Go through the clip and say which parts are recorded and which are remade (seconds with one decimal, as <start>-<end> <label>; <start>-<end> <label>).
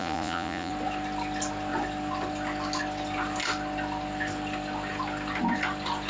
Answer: 0.0-0.7 remade; 0.7-6.1 recorded